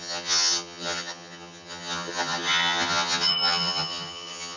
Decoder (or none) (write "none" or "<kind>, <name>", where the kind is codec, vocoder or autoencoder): vocoder, HiFi-GAN